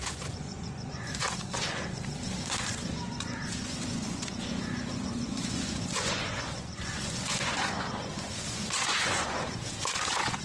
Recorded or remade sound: remade